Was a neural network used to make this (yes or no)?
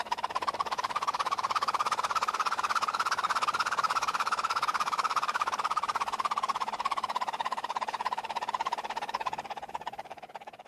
yes